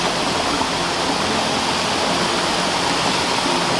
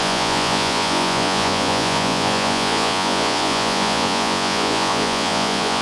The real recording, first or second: first